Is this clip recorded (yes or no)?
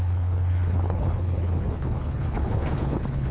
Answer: no